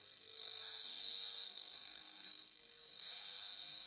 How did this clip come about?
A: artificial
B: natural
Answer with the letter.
A